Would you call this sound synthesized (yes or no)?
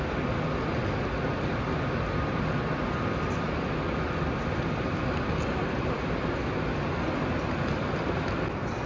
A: no